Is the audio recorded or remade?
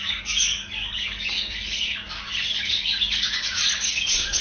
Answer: remade